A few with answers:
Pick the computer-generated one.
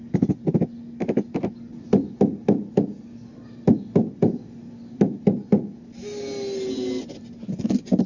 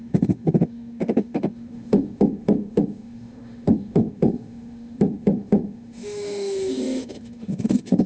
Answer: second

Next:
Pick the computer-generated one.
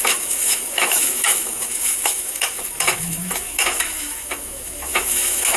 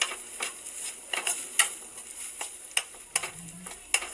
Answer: first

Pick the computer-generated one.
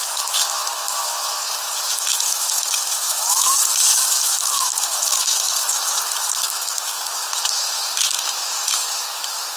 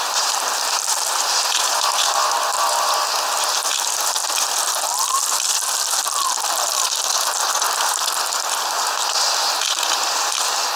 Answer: first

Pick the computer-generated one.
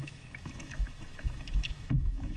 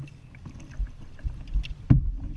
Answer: first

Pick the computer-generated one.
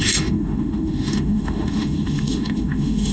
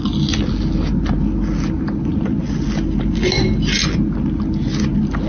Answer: first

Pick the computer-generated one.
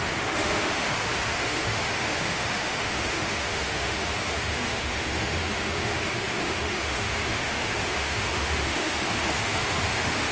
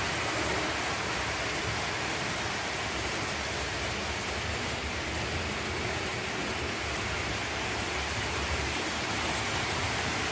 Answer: first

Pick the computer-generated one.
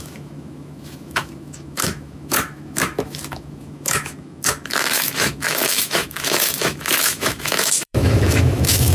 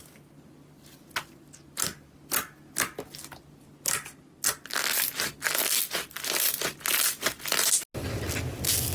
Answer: first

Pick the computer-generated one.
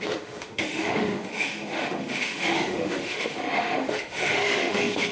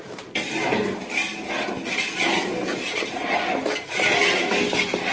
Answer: first